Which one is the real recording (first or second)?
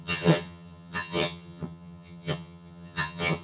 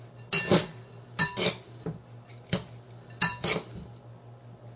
second